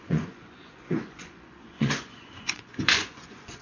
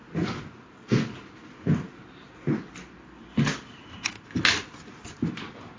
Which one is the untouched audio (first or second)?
second